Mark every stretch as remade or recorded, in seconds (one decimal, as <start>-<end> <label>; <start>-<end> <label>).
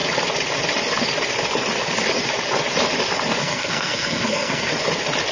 0.0-3.4 recorded; 3.4-4.7 remade; 4.7-5.3 recorded